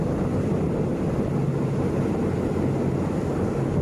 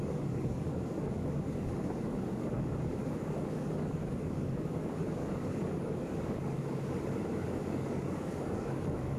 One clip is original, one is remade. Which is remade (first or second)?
second